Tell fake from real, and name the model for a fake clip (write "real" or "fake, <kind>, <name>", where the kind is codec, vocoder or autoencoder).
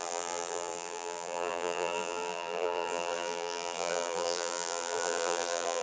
fake, vocoder, BigVGAN v2